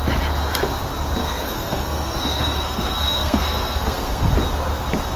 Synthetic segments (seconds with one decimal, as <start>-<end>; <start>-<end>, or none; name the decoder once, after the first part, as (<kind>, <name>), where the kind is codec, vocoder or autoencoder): 1.2-4.3 (codec, SNAC)